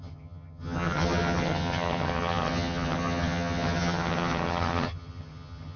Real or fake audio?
fake